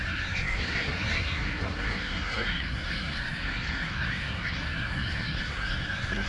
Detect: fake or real fake